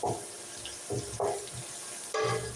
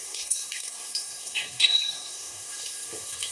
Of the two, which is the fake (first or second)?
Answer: second